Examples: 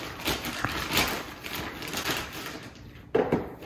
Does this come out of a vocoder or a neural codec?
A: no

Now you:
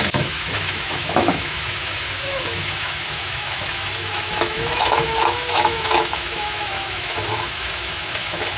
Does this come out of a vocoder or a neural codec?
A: yes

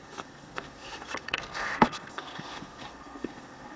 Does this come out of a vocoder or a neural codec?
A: yes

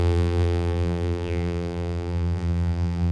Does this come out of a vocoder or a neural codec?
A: yes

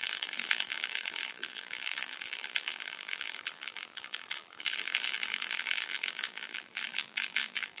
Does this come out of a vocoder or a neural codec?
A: yes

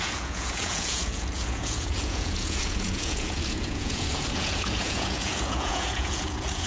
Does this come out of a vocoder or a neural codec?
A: yes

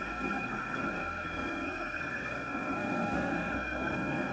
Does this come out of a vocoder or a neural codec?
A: yes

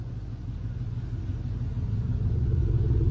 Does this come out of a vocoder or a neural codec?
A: yes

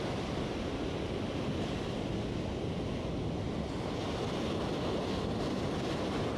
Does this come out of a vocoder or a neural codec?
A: no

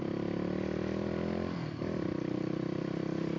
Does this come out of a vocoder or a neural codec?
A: no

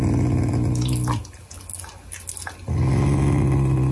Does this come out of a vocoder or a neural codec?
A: no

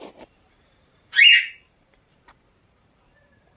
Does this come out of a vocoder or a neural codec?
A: yes